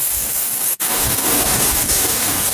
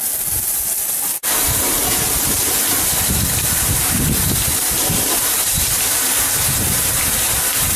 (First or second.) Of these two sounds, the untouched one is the second